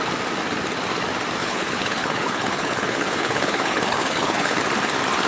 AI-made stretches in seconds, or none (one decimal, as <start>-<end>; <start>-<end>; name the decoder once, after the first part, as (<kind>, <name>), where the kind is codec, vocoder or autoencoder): 1.4-4.6 (codec, HILCodec)